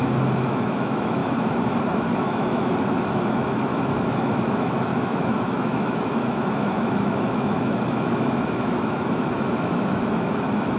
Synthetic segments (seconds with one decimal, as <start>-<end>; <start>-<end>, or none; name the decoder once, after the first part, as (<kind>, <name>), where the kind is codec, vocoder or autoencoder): 0.0-1.2 (autoencoder, DAC-VAE); 2.2-10.8